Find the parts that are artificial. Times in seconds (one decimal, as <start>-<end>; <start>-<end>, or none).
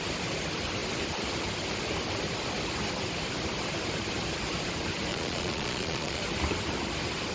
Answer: 5.1-6.2